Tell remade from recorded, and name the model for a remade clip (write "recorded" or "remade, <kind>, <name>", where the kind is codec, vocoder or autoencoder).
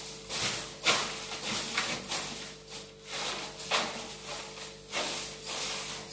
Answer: recorded